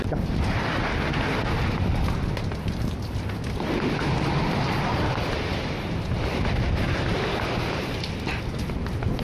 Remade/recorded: recorded